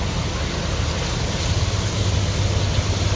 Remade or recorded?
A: recorded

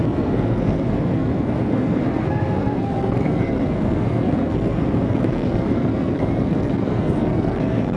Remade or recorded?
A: remade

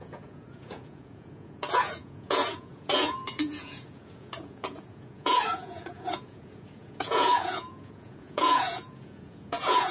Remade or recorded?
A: remade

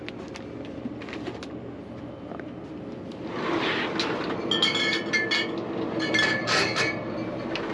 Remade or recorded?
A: recorded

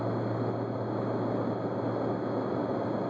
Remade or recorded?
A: recorded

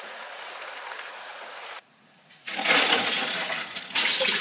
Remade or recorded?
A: remade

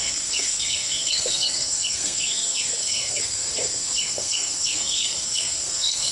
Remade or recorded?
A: remade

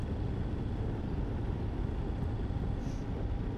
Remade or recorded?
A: recorded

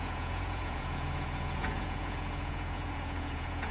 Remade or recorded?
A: remade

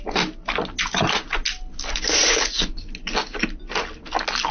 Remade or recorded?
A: recorded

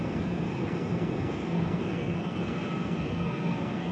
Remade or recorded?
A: remade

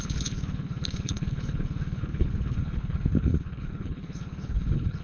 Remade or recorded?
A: remade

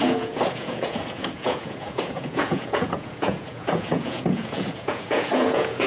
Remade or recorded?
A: remade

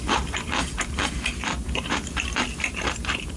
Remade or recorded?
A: remade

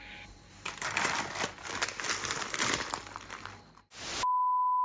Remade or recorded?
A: recorded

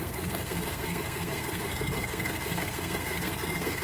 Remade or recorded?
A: remade